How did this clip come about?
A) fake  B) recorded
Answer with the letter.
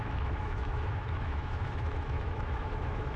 A